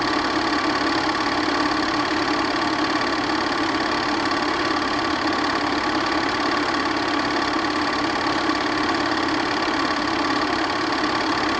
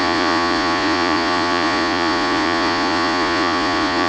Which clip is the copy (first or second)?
second